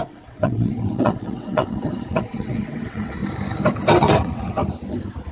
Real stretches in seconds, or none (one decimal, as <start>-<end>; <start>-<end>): 3.2-4.0; 4.6-5.3